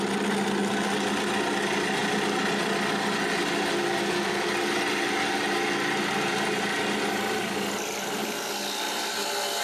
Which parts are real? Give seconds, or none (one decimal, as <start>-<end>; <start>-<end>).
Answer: 0.0-9.6